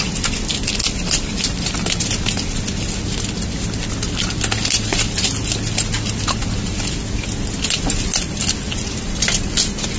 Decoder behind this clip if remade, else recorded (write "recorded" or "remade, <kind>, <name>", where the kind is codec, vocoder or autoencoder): recorded